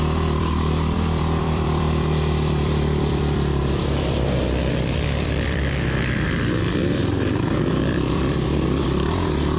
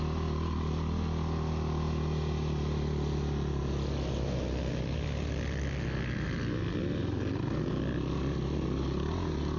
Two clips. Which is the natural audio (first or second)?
second